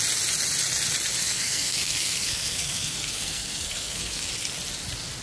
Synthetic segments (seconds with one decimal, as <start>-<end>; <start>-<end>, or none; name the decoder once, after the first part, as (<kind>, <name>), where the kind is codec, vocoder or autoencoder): 1.2-4.3 (codec, SNAC)